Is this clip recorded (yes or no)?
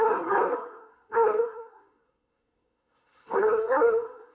no